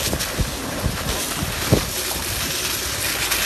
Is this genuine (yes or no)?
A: yes